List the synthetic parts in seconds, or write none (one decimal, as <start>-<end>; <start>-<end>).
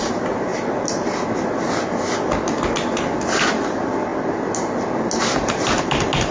none